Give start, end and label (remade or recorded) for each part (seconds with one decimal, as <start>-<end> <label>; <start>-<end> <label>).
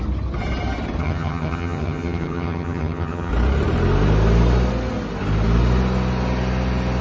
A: 0.0-1.0 recorded; 1.0-3.3 remade; 3.3-7.0 recorded